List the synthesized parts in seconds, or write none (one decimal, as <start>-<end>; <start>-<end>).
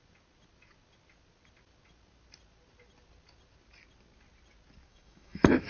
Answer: 4.9-5.7